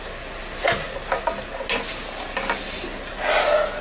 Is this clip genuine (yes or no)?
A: yes